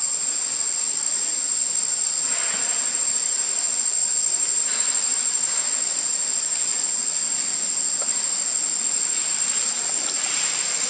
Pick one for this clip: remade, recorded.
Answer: recorded